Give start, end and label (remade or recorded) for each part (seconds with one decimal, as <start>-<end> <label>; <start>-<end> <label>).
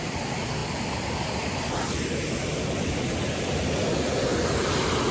0.0-5.1 recorded